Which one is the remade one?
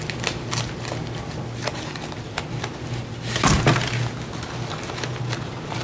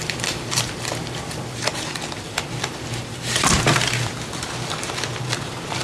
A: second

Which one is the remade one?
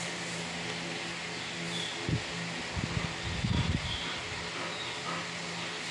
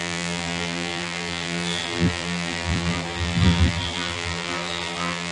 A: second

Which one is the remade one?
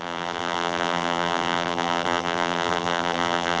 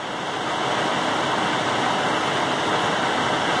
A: first